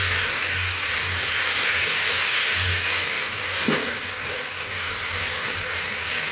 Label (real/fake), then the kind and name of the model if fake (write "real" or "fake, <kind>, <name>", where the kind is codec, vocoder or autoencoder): fake, codec, DAC